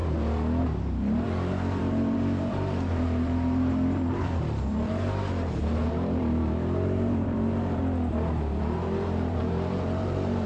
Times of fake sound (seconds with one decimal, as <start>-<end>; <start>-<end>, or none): 0.6-7.8; 8.6-10.5